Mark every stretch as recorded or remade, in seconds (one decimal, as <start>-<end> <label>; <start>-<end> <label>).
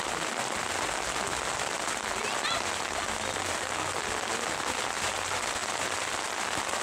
0.0-6.8 recorded